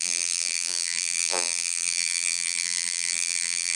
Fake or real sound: fake